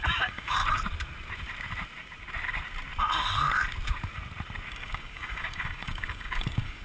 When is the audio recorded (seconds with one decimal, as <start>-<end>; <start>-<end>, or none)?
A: 0.6-4.7